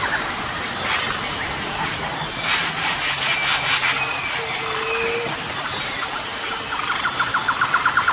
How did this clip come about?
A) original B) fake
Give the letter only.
A